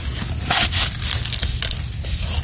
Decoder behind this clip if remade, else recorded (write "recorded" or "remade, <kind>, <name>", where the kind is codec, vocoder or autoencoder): recorded